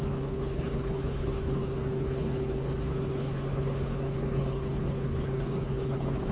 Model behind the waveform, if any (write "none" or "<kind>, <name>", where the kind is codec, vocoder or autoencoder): codec, HILCodec